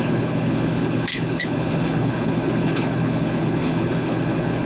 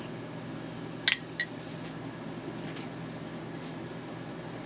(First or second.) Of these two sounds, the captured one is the second